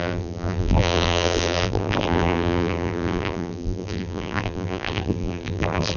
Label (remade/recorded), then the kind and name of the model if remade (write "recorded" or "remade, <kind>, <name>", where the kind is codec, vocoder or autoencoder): remade, vocoder, BigVGAN v2